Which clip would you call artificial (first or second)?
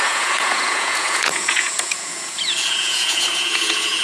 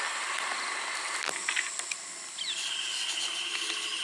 first